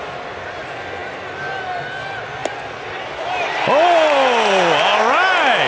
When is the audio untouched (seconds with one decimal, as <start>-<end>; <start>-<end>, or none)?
0.0-5.7